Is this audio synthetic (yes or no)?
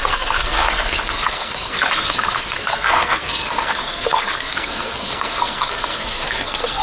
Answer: yes